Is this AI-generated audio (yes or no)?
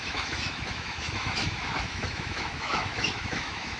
yes